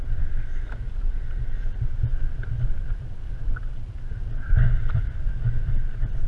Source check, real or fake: real